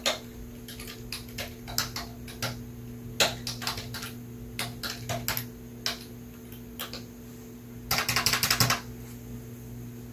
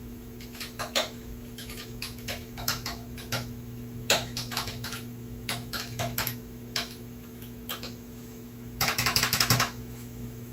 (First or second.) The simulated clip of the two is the second